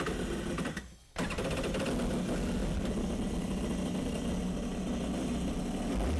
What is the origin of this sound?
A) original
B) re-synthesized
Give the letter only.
A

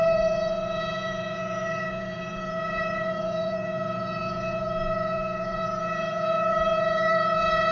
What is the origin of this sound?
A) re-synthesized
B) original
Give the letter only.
A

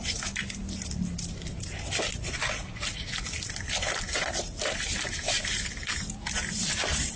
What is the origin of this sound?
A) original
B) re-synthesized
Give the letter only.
A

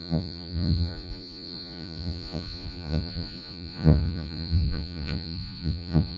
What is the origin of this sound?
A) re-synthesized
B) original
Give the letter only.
A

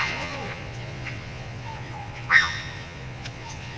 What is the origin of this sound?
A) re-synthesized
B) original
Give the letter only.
A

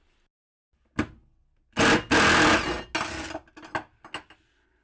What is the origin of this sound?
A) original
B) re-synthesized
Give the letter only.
A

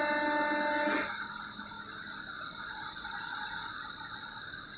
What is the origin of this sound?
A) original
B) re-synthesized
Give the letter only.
A